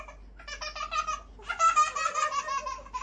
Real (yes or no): yes